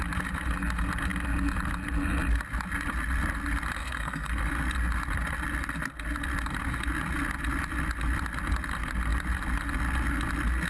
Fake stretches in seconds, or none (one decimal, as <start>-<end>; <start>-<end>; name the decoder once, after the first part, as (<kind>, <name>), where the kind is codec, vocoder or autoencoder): 3.8-4.3 (codec, SNAC)